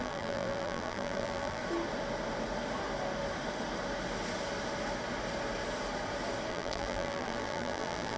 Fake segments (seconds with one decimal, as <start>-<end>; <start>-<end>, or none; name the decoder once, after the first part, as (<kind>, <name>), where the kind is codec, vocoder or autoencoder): 0.0-1.6 (vocoder, BigVGAN v2); 6.5-8.2